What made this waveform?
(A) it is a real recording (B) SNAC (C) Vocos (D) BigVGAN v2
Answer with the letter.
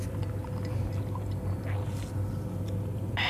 A